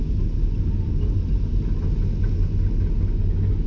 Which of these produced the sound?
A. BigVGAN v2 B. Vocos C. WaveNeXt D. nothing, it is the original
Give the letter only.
D